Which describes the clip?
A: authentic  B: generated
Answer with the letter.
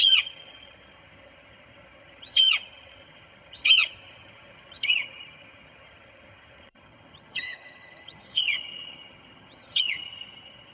B